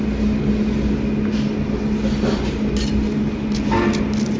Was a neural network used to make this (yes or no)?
no